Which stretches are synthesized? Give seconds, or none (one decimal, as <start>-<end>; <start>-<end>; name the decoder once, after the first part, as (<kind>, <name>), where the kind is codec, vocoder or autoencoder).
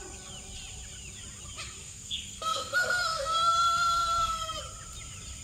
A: 1.8-4.6 (codec, SNAC)